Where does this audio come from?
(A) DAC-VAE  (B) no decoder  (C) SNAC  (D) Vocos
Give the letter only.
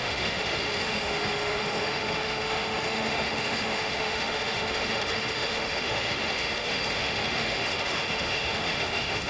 A